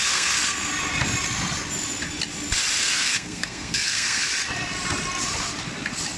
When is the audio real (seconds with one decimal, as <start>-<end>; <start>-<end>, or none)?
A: 0.7-2.8; 4.3-6.2